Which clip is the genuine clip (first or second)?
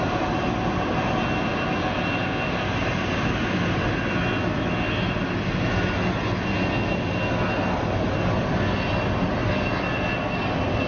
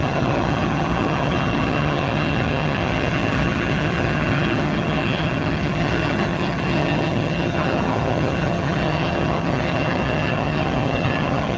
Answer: first